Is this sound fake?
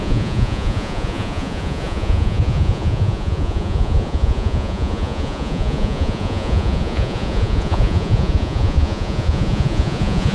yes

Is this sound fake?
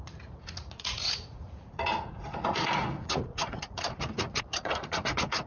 yes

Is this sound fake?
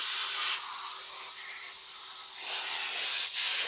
no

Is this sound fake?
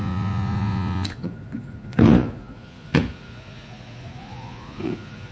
yes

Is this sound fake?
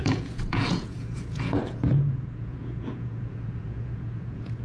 yes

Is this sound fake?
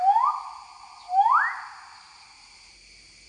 no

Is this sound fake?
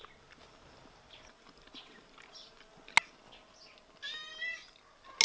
no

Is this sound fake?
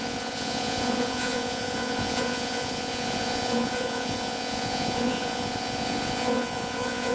yes